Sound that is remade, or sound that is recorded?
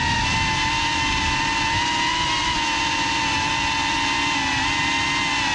recorded